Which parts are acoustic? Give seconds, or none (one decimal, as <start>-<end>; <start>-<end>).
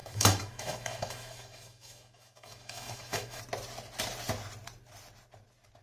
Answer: 3.4-5.8